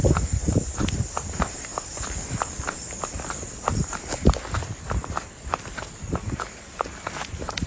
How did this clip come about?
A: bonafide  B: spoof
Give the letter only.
B